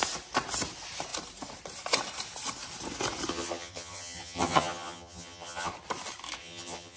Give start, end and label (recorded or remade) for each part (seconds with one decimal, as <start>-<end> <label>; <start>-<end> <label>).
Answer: 0.0-3.3 recorded; 3.3-5.7 remade; 5.7-6.4 recorded; 6.4-7.0 remade